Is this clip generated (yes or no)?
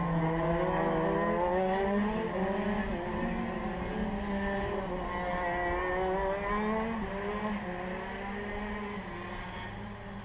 no